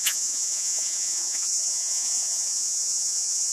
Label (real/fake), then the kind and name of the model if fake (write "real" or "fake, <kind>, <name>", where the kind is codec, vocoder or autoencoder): fake, vocoder, Vocos